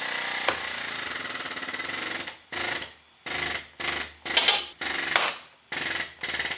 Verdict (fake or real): real